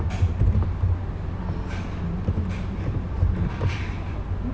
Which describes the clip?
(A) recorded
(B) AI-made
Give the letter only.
A